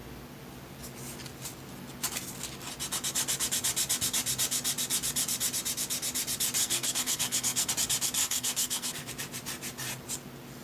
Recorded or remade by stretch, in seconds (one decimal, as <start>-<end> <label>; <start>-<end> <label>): 0.0-6.6 recorded; 6.6-7.7 remade; 7.7-8.2 recorded; 8.2-9.1 remade; 9.1-10.6 recorded